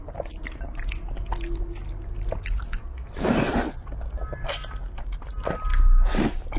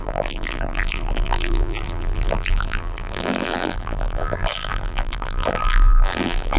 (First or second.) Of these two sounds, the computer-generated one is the second